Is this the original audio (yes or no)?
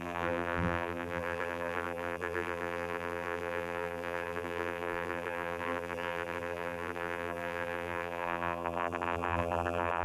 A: no